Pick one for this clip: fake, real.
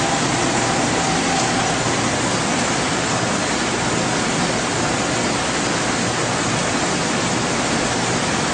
real